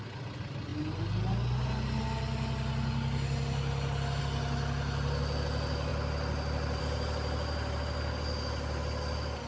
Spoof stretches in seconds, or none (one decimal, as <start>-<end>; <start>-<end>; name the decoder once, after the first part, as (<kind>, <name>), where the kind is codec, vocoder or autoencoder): none